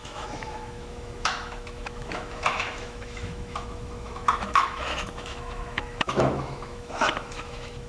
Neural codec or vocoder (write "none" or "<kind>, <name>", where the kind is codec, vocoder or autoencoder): autoencoder, DAC-VAE